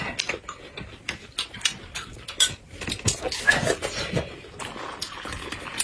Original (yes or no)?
yes